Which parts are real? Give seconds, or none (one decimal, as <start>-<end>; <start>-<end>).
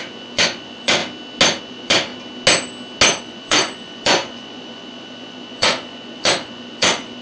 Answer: 1.0-1.6; 2.1-3.2